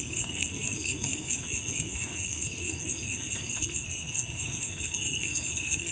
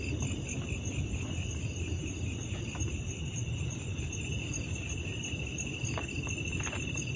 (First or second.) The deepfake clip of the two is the first